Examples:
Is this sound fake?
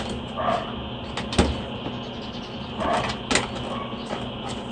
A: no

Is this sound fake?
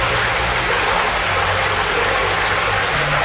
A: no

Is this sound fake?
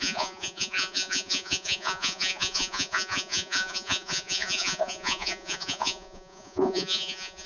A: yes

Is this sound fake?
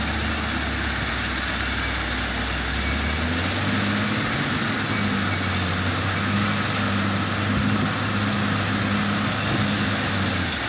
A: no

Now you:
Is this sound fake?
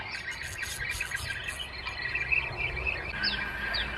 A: no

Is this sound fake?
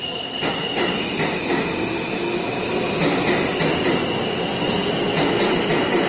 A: no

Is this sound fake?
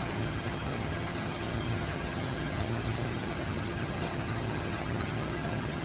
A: yes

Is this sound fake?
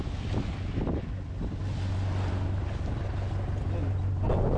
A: no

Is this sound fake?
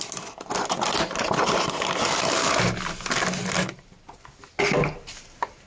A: no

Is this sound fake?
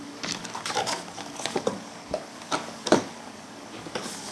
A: yes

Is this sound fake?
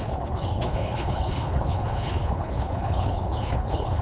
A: yes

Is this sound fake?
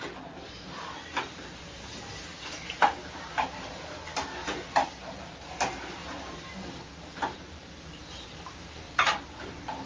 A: no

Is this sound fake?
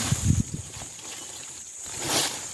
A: no